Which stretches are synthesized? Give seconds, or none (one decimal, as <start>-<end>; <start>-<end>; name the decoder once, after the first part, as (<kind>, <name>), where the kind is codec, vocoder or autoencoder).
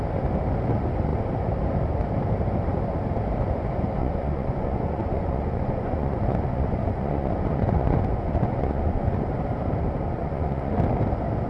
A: 4.0-9.2 (vocoder, Vocos); 10.2-10.7